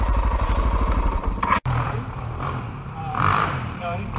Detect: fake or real fake